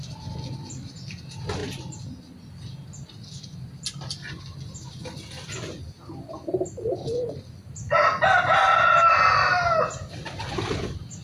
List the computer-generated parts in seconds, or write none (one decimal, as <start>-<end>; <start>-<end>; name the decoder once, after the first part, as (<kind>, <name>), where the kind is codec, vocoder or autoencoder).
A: none